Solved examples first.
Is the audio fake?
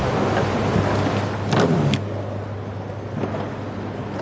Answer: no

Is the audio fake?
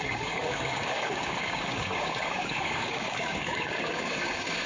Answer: yes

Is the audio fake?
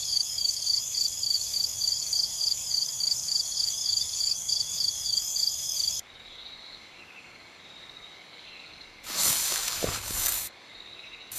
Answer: yes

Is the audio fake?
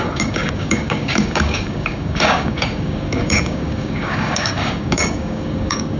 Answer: yes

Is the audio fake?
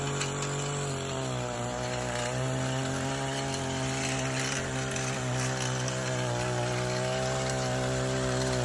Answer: no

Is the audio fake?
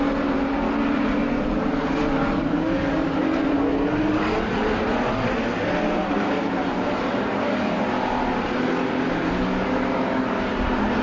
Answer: no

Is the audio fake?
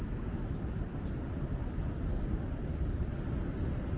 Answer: no